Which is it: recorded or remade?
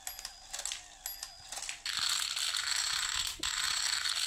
recorded